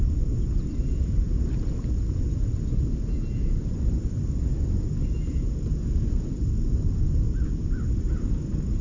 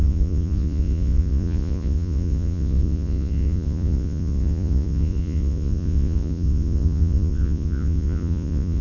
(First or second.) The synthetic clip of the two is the second